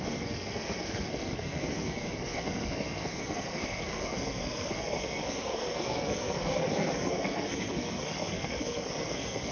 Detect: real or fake fake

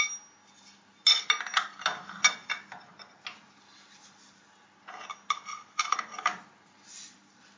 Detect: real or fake real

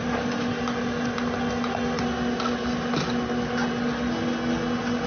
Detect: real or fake real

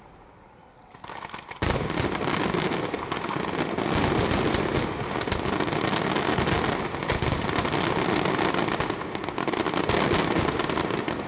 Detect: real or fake real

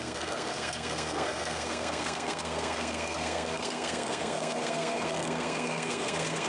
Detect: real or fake fake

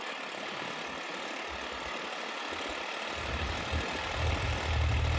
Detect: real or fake real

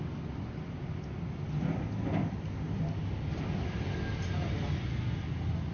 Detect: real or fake real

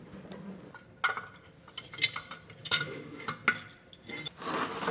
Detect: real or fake real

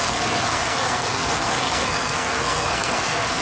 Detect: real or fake fake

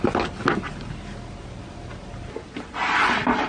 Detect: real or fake real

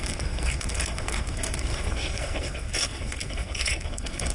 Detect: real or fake fake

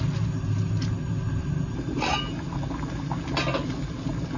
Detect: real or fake real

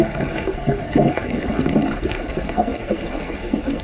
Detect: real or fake fake